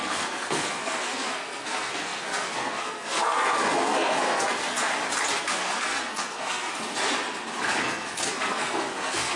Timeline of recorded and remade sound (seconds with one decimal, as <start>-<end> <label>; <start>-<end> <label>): 0.0-4.9 remade; 4.9-5.4 recorded; 5.4-6.7 remade; 6.7-7.8 recorded; 7.8-9.4 remade